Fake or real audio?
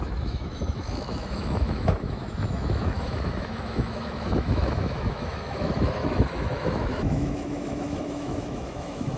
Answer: fake